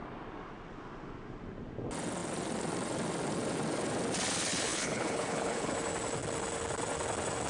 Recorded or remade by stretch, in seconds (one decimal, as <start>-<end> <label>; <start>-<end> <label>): 0.0-4.5 recorded; 4.5-5.7 remade; 5.7-7.5 recorded